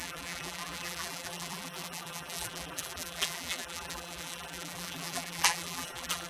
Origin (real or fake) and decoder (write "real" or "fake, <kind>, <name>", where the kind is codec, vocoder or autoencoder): fake, vocoder, BigVGAN v2